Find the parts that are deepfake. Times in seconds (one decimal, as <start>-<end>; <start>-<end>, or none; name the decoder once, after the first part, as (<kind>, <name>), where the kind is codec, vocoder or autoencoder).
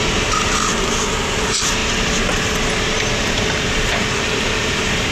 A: none